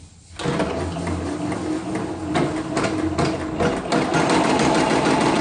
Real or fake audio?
real